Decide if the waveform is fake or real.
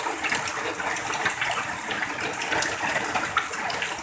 real